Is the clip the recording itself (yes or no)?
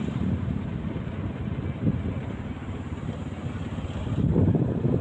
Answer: no